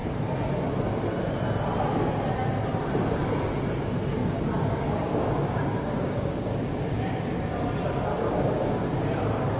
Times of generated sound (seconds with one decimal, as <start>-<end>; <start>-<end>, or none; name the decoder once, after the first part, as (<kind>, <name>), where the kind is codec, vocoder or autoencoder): 4.2-7.4 (codec, DAC); 8.1-8.8